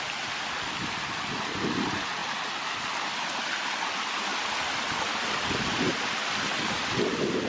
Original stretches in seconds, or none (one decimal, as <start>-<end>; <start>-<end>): 0.0-7.5